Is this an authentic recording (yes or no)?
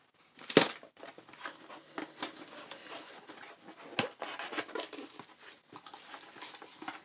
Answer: yes